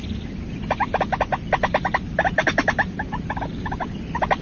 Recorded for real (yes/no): yes